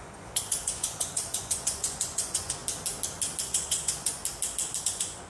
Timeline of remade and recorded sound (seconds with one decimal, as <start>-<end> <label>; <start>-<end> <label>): 0.0-2.6 remade; 2.6-3.4 recorded; 3.4-4.2 remade; 4.2-4.8 recorded; 4.8-5.3 remade